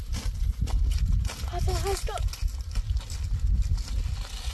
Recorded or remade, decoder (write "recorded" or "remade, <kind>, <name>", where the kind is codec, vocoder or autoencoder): recorded